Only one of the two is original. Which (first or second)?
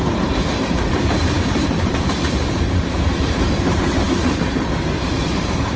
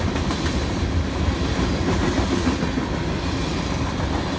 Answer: second